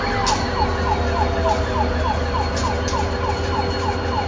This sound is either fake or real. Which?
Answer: real